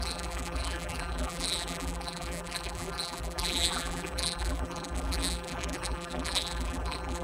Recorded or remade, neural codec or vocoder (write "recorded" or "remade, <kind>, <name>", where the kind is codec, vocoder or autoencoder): remade, vocoder, BigVGAN v2